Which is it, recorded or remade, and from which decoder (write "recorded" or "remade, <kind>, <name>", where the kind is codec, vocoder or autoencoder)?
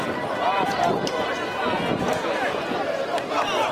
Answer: recorded